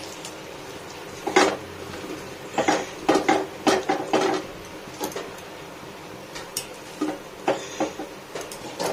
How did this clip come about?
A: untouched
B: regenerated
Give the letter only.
B